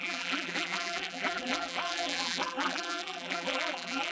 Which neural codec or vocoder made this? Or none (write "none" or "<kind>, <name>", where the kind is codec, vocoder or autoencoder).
vocoder, BigVGAN v2